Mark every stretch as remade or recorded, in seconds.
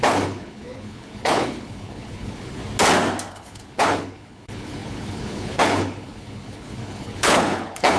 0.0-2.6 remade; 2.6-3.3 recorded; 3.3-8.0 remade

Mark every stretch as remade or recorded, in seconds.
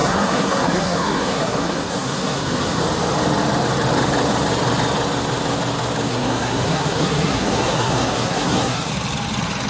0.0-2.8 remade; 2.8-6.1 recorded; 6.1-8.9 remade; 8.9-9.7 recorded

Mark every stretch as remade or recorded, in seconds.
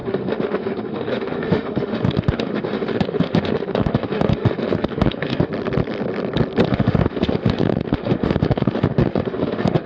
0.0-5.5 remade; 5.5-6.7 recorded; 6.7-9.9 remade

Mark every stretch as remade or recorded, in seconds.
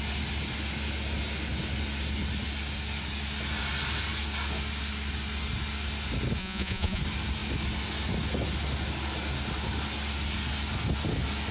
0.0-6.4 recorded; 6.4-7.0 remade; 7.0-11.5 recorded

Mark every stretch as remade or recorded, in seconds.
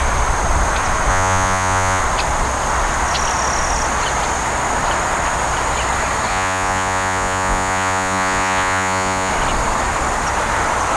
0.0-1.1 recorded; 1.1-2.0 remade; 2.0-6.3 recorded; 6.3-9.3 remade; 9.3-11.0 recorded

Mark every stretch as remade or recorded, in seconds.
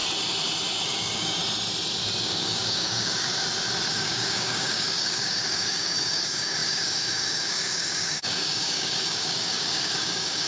0.0-0.8 recorded; 0.8-1.4 remade; 1.4-2.2 recorded; 2.2-3.3 remade; 3.3-3.9 recorded; 3.9-10.5 remade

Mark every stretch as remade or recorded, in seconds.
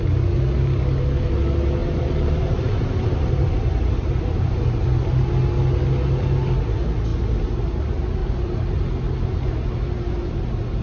0.0-1.8 recorded; 1.8-5.2 remade; 5.2-8.2 recorded; 8.2-8.8 remade; 8.8-10.8 recorded